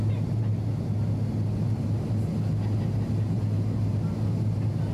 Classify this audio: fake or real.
real